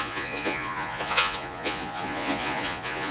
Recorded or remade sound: remade